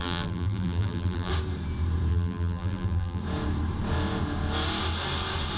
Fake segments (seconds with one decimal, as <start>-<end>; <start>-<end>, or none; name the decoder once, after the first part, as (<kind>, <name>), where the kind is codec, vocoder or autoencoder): 0.0-1.3 (vocoder, BigVGAN v2); 2.1-3.2